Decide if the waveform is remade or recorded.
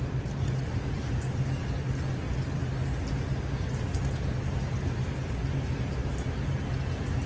recorded